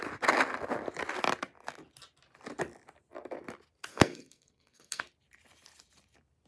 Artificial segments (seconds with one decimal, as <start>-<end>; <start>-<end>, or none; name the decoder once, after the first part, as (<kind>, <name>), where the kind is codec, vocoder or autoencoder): 3.9-5.0 (codec, SNAC)